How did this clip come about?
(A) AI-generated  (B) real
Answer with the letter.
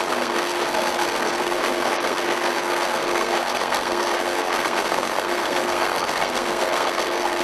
A